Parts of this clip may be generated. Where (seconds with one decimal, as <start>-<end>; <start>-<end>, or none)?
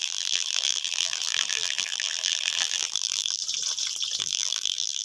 0.0-3.4; 4.2-5.0